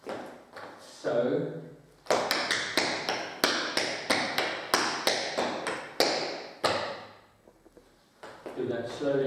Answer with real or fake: real